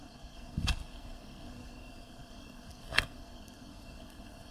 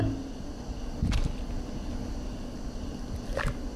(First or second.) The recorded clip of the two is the second